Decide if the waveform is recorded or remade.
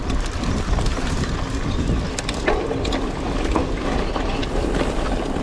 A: recorded